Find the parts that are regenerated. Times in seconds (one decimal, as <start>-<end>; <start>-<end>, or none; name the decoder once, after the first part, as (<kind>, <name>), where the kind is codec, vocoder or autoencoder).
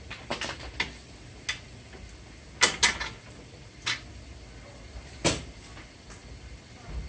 none